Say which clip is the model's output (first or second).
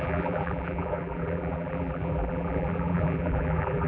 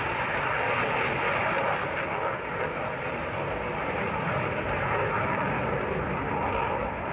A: first